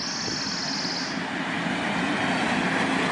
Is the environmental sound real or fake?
real